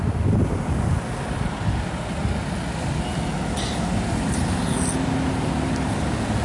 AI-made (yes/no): no